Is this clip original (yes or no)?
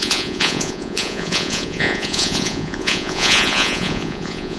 no